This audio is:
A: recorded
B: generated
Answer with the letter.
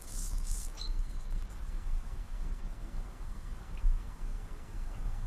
B